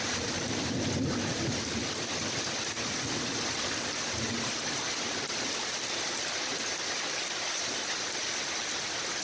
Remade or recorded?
recorded